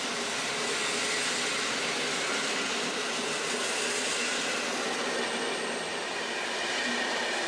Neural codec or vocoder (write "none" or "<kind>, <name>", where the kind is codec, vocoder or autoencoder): none